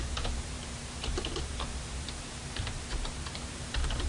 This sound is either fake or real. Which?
fake